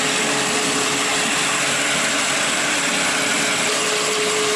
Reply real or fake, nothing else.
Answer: real